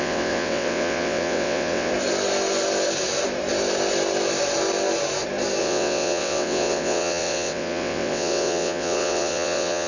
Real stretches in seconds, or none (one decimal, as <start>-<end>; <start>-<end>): 1.9-5.6